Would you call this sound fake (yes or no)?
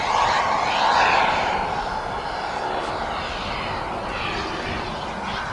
no